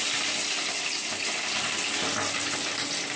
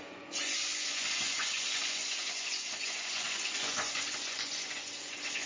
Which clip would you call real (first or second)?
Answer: first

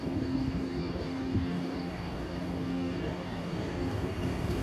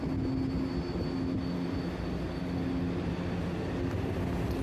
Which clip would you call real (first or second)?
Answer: second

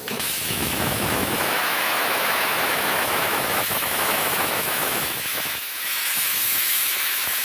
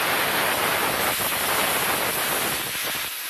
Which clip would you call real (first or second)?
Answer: second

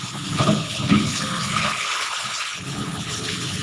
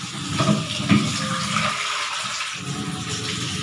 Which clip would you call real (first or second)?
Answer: second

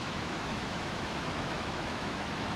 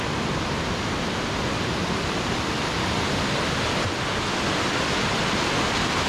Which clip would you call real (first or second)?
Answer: second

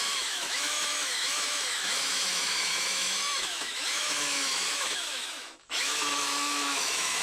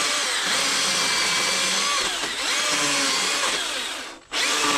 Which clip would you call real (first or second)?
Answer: second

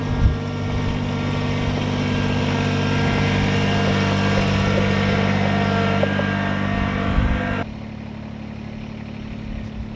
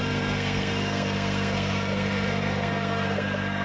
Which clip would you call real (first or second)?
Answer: first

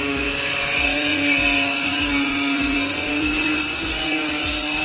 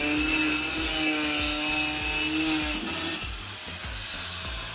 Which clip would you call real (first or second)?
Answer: second